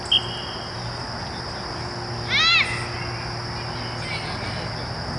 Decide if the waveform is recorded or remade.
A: recorded